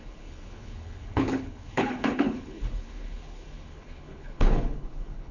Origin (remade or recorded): remade